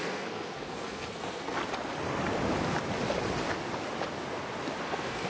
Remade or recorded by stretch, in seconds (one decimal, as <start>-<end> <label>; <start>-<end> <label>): 0.0-1.6 remade; 1.6-4.8 recorded; 4.8-5.3 remade